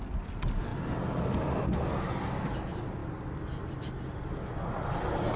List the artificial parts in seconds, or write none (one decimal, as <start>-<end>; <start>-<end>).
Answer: none